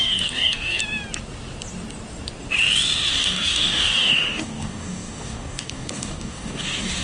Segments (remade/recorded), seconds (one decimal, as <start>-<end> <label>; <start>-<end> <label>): 0.0-0.8 remade; 0.8-3.1 recorded; 3.1-7.0 remade